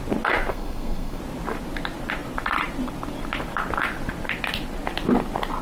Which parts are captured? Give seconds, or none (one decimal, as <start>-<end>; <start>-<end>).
0.0-0.5; 1.2-5.6